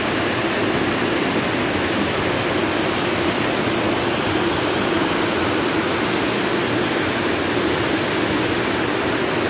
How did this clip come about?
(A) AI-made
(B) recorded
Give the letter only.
B